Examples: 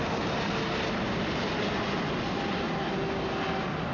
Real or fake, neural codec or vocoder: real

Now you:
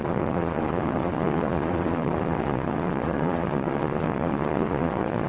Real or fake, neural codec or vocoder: fake, vocoder, Vocos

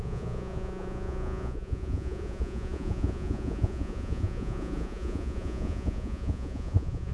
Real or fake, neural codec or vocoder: fake, vocoder, Vocos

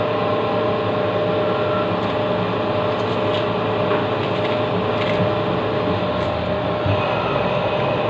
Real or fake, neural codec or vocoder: real